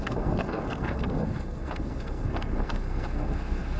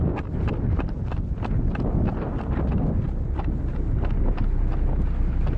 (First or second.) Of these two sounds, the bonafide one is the second